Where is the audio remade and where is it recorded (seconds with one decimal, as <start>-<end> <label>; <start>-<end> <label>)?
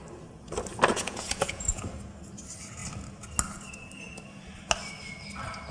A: 0.0-0.9 recorded; 0.9-1.9 remade; 1.9-5.7 recorded